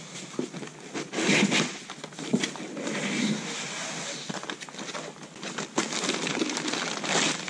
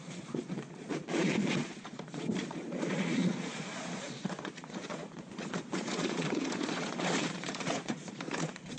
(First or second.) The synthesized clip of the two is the second